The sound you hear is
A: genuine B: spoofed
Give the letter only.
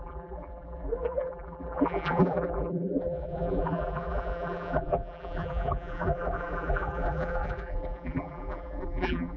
B